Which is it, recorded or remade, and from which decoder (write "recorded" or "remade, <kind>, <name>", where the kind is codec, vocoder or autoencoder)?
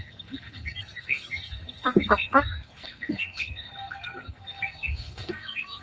remade, codec, SNAC